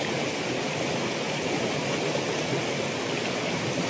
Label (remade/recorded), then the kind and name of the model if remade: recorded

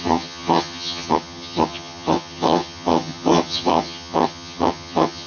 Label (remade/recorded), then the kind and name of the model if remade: remade, vocoder, HiFi-GAN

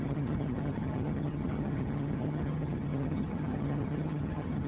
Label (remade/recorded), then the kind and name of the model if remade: remade, vocoder, HiFi-GAN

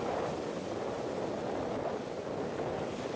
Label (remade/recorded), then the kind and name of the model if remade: recorded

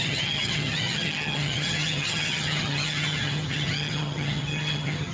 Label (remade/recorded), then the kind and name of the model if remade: remade, vocoder, HiFi-GAN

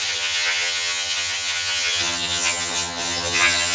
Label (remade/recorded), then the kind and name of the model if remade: remade, vocoder, HiFi-GAN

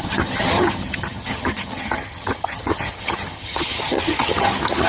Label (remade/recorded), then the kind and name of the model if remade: remade, vocoder, HiFi-GAN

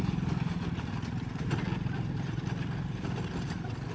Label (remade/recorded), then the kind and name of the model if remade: recorded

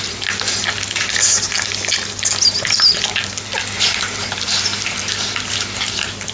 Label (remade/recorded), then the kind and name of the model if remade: recorded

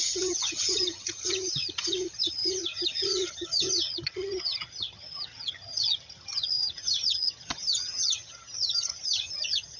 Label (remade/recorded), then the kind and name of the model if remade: remade, vocoder, HiFi-GAN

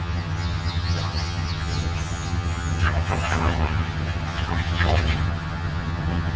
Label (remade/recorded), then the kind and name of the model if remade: remade, vocoder, HiFi-GAN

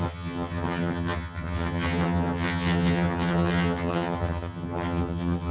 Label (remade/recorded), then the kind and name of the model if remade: remade, vocoder, HiFi-GAN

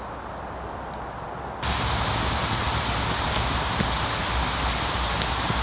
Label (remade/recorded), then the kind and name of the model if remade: recorded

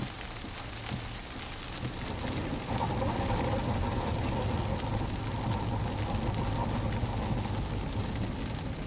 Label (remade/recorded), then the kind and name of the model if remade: recorded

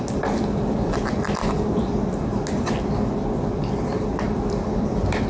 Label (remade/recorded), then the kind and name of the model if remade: recorded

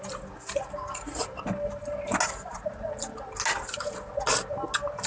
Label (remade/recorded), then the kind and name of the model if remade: recorded